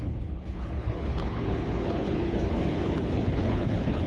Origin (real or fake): fake